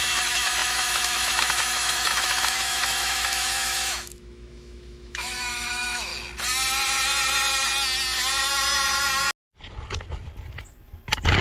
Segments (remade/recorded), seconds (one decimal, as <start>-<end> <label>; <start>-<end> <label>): 0.0-6.1 remade; 6.1-11.4 recorded